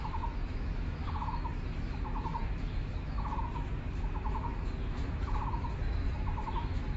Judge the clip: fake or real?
fake